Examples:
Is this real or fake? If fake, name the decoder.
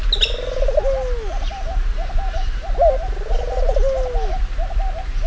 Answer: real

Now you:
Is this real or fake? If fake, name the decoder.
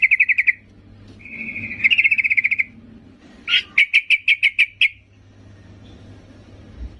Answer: real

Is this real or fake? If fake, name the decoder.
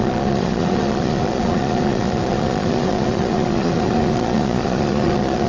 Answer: fake, vocoder, Vocos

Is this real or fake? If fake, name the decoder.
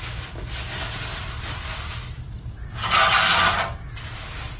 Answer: real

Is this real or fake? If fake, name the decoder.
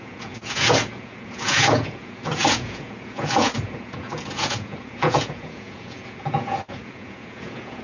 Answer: fake, vocoder, Vocos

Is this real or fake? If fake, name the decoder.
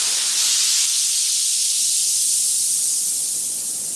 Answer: fake, vocoder, Vocos